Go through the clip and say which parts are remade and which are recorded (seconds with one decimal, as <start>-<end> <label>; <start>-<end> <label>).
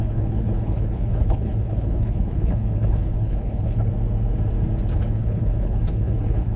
0.0-3.9 remade; 3.9-4.9 recorded; 4.9-6.6 remade